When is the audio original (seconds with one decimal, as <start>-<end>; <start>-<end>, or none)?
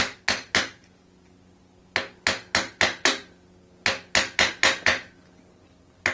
0.0-6.1